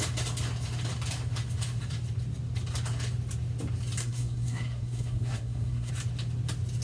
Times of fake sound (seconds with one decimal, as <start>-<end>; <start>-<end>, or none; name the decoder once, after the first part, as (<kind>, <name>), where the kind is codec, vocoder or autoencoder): 4.0-5.9 (codec, SNAC)